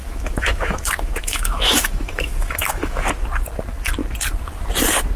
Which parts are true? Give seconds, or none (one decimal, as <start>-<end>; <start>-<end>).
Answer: 3.1-5.2